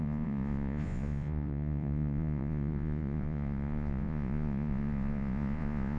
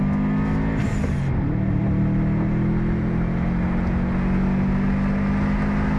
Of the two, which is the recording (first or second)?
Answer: second